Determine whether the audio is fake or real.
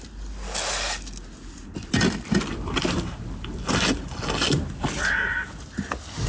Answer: real